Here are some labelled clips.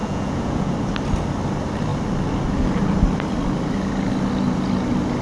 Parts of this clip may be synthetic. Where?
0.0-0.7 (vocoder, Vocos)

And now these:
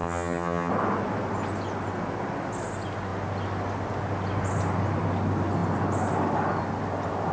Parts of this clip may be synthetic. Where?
0.0-0.7 (vocoder, HiFi-GAN)

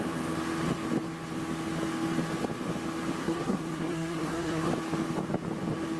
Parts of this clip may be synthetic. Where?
3.2-4.7 (codec, SNAC)

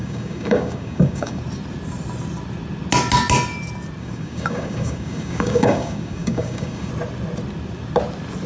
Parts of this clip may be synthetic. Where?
0.0-1.4 (codec, DAC); 4.0-6.9

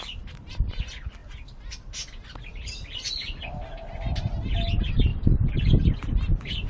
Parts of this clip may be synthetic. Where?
none